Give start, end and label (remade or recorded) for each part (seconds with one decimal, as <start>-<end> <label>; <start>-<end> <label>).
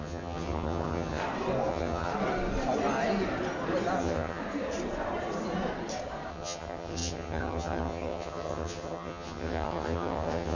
0.0-1.2 remade; 1.2-1.7 recorded; 1.7-2.1 remade; 2.1-4.0 recorded; 4.0-4.4 remade; 4.4-6.3 recorded; 6.3-10.5 remade